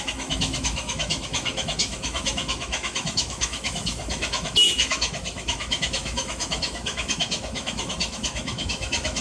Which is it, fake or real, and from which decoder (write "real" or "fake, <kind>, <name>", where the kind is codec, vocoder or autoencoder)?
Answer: fake, autoencoder, DAC-VAE